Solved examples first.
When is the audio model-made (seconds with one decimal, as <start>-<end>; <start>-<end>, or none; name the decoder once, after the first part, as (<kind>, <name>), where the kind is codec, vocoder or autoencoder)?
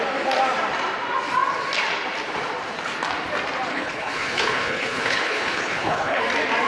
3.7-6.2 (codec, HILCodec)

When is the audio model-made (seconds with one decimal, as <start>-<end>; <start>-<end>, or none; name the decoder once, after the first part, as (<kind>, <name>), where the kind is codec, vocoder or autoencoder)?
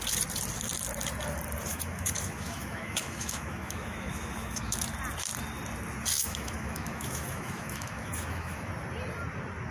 1.7-4.8 (autoencoder, DAC-VAE); 6.1-8.7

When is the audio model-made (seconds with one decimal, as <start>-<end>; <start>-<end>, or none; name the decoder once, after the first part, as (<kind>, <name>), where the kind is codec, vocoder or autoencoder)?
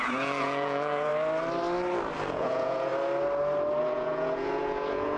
0.0-1.1 (vocoder, Vocos); 2.3-2.9; 3.8-5.2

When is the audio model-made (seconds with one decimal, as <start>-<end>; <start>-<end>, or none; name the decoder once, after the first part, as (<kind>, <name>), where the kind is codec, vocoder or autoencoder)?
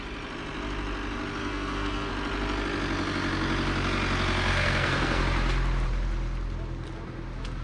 1.4-2.1 (codec, SNAC); 4.5-5.2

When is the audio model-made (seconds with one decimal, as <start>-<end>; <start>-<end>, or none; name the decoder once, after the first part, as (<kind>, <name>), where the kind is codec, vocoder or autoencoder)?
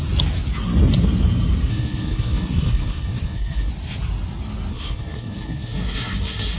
1.7-3.7 (codec, SNAC); 4.7-6.6